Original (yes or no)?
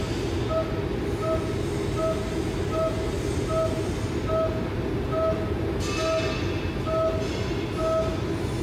yes